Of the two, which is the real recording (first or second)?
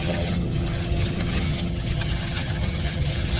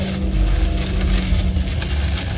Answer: second